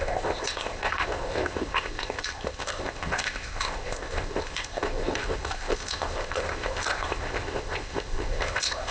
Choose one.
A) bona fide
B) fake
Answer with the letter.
B